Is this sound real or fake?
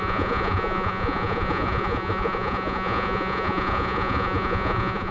fake